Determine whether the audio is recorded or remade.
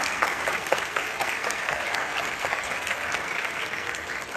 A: remade